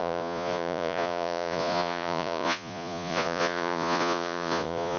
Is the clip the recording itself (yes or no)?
no